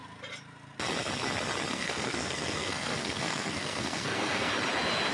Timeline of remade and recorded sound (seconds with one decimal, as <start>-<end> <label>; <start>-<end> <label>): 0.0-1.7 recorded; 1.7-4.5 remade; 4.5-5.1 recorded

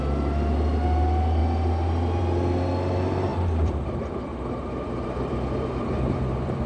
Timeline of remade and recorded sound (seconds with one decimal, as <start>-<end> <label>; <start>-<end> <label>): 0.0-3.3 recorded; 3.3-6.7 remade

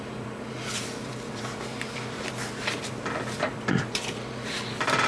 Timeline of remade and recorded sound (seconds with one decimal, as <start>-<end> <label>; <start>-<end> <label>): 0.0-5.1 remade

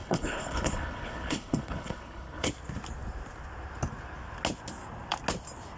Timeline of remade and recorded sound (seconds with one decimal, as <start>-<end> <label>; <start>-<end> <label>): 0.0-2.5 remade; 2.5-5.8 recorded